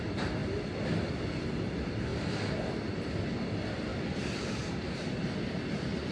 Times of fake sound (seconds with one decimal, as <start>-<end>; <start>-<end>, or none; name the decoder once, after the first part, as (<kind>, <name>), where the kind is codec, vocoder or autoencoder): 0.4-1.1 (vocoder, BigVGAN v2)

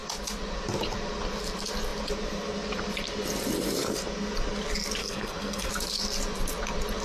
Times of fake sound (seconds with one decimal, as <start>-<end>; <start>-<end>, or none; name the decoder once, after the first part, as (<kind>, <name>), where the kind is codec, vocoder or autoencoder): 5.0-5.7 (codec, SNAC)

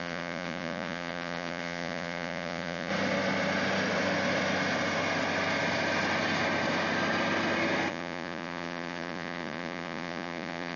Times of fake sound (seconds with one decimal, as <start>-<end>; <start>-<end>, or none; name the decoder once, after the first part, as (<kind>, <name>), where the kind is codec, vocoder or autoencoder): 0.0-2.9 (vocoder, Vocos); 7.9-10.8